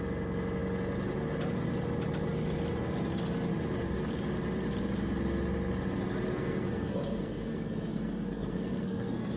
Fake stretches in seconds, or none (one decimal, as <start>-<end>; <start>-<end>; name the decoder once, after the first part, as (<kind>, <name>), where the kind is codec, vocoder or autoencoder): 6.3-9.4 (codec, SNAC)